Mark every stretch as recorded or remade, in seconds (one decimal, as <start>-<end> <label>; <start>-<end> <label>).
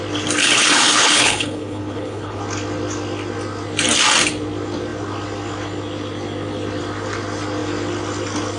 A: 0.0-0.4 recorded; 0.4-2.4 remade; 2.4-8.6 recorded